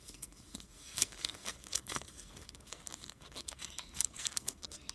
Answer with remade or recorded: remade